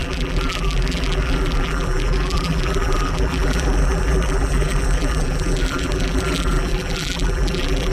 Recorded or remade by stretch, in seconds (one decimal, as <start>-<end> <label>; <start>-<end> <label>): 0.0-7.9 remade